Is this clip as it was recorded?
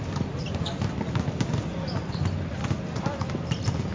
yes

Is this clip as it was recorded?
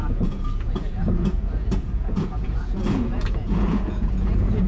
no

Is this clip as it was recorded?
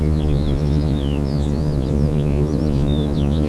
no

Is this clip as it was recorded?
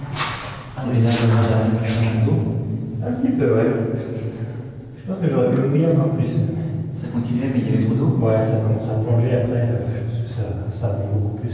yes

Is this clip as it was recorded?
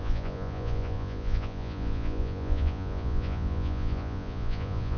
no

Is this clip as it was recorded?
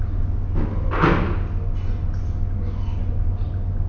yes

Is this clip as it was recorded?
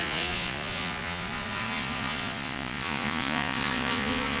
no